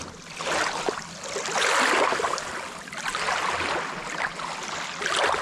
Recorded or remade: recorded